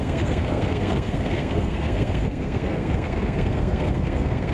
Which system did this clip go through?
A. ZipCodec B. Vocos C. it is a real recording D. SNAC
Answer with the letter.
D